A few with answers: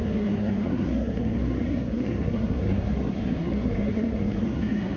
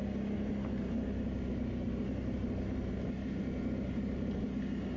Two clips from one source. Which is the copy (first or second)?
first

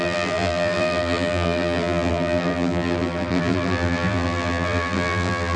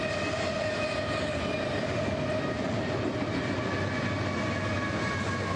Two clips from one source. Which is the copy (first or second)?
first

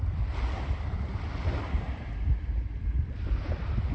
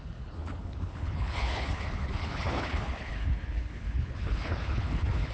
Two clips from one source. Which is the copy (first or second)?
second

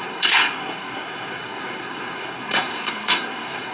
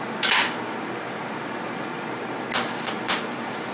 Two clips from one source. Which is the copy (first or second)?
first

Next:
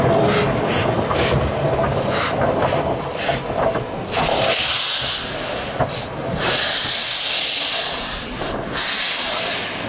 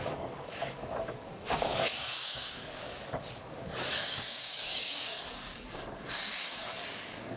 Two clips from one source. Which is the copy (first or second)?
second